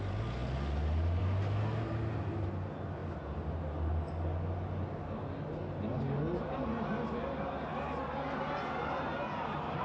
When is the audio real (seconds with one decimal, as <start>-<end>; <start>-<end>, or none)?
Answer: 0.0-9.8